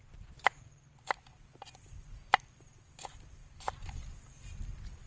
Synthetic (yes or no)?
no